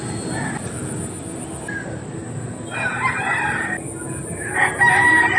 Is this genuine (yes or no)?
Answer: yes